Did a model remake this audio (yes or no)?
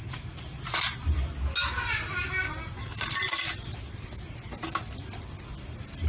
no